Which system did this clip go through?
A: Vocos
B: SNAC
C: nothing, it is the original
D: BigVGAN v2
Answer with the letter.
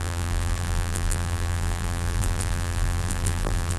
D